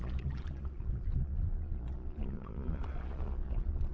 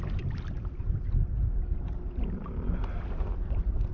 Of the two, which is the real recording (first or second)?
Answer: second